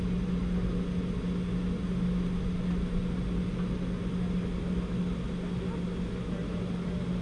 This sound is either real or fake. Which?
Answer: real